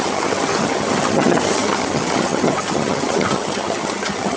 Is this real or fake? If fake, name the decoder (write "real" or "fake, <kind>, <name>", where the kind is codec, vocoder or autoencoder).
fake, vocoder, HiFi-GAN